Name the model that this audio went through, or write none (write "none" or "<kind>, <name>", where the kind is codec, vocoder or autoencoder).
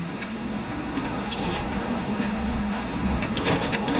codec, SNAC